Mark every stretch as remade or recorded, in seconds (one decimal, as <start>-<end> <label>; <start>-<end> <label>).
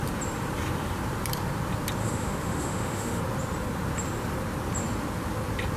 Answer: 0.0-2.0 recorded; 2.0-3.2 remade; 3.2-5.8 recorded